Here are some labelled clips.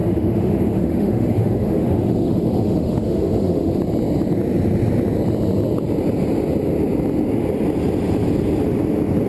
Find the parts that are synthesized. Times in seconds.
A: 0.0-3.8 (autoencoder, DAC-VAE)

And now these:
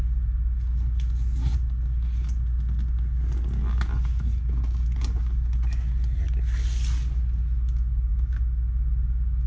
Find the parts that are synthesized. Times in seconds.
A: none